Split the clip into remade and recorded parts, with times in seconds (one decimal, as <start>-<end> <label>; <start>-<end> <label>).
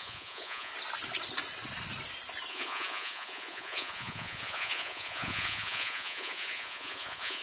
0.0-0.7 remade; 0.7-2.5 recorded; 2.5-7.4 remade